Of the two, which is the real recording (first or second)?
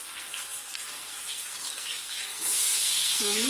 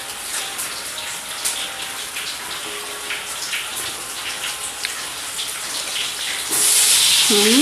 second